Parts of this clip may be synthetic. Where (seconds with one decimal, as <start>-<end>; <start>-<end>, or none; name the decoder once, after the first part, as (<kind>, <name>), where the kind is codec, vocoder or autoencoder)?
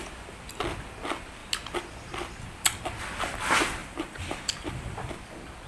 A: 3.8-5.1 (vocoder, BigVGAN v2)